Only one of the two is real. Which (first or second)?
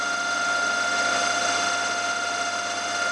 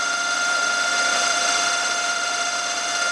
first